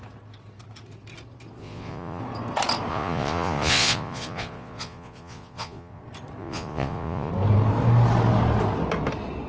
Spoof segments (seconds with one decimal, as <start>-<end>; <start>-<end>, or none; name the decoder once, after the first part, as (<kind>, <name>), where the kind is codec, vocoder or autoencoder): 1.6-2.2 (vocoder, Vocos); 2.9-6.0; 6.4-7.3